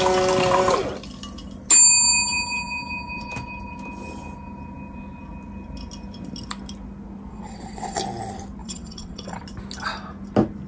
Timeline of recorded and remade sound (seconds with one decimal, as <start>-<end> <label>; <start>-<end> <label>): 0.0-7.3 recorded; 7.3-8.0 remade; 8.0-8.6 recorded; 8.6-9.4 remade; 9.4-10.7 recorded